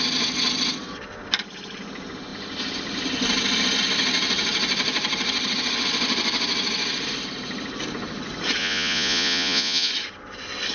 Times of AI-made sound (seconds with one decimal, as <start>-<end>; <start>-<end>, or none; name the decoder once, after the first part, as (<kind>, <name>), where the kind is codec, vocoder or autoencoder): 8.6-9.9 (vocoder, Vocos)